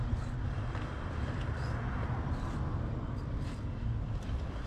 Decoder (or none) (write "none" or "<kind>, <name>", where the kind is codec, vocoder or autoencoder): none